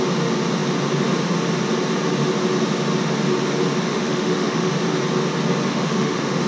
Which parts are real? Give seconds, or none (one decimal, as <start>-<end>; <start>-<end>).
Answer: 0.0-3.9; 4.7-5.7